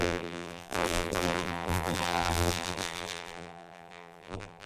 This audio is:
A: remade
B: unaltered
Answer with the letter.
A